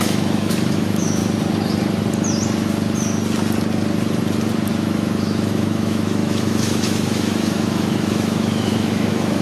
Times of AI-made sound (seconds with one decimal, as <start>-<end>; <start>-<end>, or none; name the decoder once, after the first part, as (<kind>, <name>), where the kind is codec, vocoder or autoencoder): 0.0-1.2 (autoencoder, DAC-VAE); 4.7-9.4